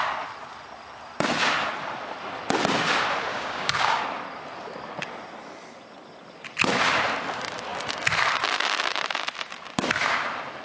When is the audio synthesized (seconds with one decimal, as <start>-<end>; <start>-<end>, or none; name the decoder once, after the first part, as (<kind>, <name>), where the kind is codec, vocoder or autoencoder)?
3.3-4.0 (codec, DAC)